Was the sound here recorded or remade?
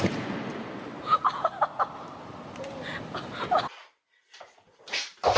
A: recorded